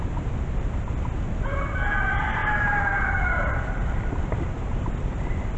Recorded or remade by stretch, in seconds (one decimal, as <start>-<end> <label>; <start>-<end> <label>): 0.0-2.4 recorded; 2.4-4.0 remade; 4.0-5.6 recorded